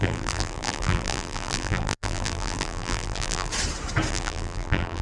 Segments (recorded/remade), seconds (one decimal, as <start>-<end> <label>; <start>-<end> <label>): 0.0-3.5 remade; 3.5-4.1 recorded; 4.1-5.0 remade